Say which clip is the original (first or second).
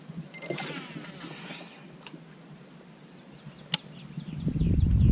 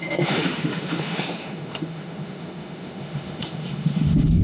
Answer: first